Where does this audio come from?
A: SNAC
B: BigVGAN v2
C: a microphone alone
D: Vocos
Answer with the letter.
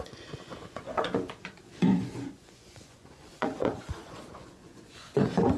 D